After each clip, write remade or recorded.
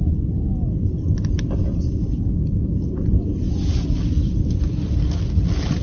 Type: recorded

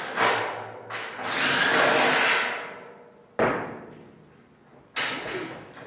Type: recorded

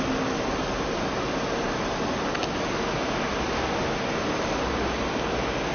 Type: recorded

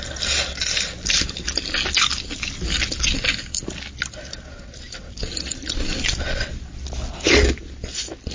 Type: recorded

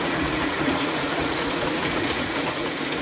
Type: remade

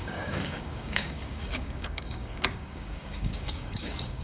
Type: remade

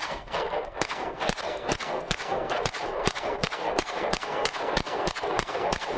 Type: remade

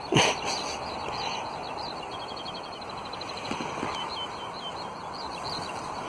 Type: recorded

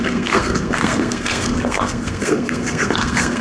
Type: remade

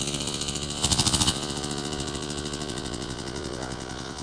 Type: remade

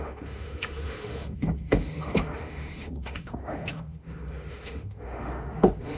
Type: remade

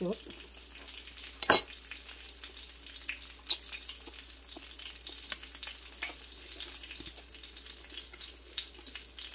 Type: recorded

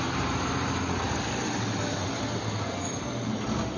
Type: recorded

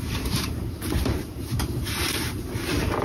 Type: remade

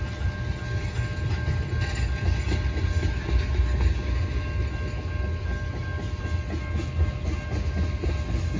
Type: recorded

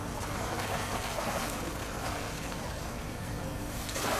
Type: remade